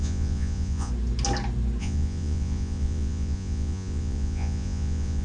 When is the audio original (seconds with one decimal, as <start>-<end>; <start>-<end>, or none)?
0.9-1.8

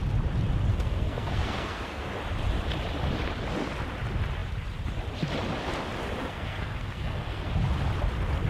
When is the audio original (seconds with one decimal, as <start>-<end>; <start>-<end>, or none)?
0.0-0.7; 2.1-6.2; 7.5-8.5

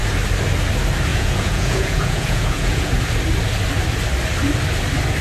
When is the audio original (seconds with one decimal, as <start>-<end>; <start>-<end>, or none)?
0.0-1.1; 2.9-5.2

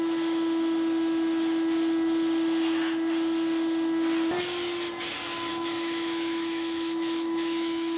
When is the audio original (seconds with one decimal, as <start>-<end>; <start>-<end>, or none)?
0.0-5.5

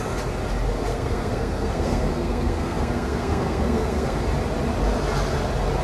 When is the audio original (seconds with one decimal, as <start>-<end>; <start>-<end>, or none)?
0.0-0.9; 4.2-5.8